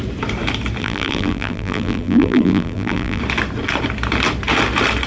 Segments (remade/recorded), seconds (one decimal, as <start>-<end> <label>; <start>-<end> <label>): 0.0-0.8 recorded; 0.8-3.2 remade; 3.2-5.1 recorded